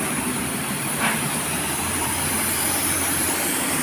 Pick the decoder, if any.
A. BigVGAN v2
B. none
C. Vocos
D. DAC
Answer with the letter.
A